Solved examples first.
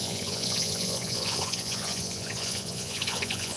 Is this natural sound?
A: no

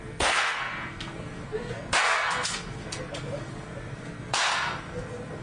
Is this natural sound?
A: no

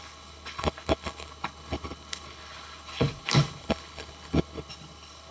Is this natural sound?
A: no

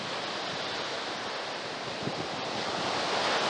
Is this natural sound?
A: yes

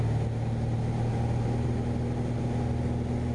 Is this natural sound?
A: yes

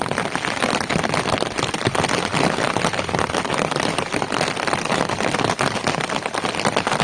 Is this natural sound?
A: yes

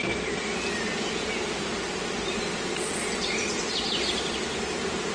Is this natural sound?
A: yes